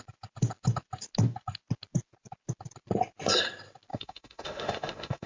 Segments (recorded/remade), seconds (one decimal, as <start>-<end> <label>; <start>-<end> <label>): 0.0-3.9 recorded; 3.9-5.3 remade